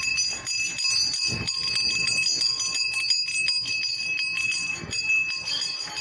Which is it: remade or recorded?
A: recorded